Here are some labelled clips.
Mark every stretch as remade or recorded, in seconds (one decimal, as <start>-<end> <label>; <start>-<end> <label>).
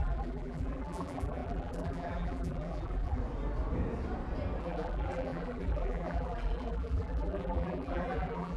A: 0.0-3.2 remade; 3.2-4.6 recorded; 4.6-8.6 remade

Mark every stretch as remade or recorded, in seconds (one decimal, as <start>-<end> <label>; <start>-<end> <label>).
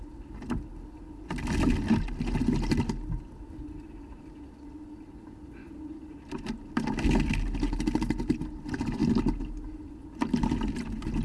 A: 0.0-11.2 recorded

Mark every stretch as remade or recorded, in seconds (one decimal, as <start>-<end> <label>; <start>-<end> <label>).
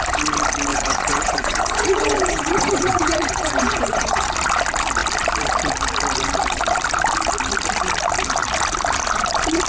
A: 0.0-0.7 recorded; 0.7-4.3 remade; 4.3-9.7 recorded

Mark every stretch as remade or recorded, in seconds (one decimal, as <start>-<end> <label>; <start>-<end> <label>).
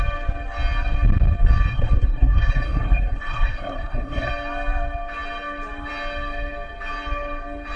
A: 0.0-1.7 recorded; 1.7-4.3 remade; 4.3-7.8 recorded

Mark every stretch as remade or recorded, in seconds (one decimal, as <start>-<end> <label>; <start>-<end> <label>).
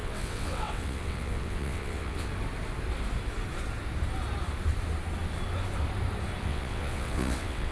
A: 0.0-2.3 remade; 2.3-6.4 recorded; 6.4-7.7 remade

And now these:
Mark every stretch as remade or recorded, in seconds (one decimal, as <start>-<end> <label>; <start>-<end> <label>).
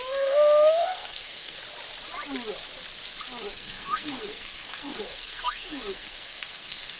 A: 0.0-1.6 remade; 1.6-3.5 recorded; 3.5-7.0 remade